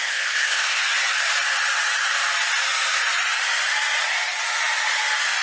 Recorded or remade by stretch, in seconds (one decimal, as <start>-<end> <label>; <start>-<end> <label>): 0.0-0.8 remade; 0.8-5.4 recorded